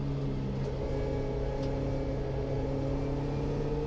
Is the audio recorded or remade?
recorded